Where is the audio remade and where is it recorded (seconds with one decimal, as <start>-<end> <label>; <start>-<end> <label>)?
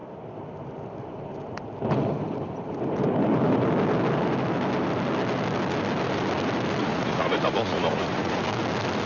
0.0-6.8 recorded; 6.8-8.4 remade; 8.4-9.1 recorded